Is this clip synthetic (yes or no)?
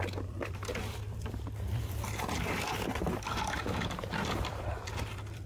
yes